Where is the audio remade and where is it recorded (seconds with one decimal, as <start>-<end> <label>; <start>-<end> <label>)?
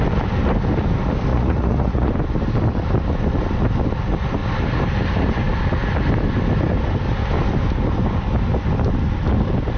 0.0-1.3 recorded; 1.3-2.1 remade; 2.1-9.8 recorded